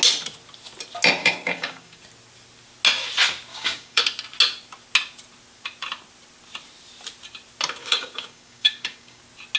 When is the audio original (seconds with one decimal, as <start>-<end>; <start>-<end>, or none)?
0.0-1.2; 2.0-3.5; 4.0-7.8; 9.2-9.6